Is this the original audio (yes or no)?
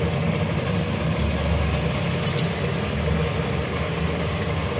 yes